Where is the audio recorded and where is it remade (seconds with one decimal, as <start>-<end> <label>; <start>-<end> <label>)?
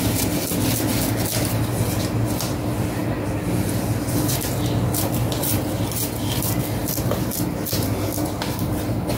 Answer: 0.0-6.8 recorded; 6.8-7.3 remade; 7.3-9.2 recorded